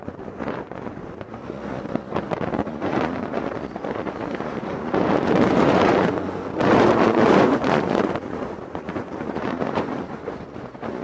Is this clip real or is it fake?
fake